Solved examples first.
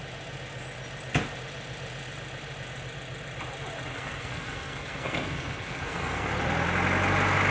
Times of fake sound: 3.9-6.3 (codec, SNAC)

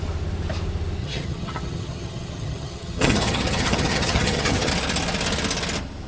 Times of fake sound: 1.0-4.7 (vocoder, HiFi-GAN)

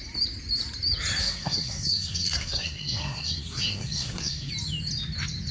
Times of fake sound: 1.2-4.5 (codec, SNAC)

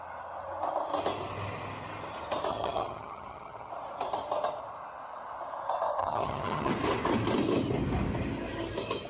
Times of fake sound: 2.5-3.7 (vocoder, HiFi-GAN); 6.0-6.7

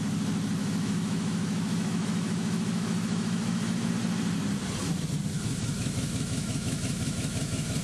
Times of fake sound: 0.6-3.9 (autoencoder, DAC-VAE); 5.3-7.8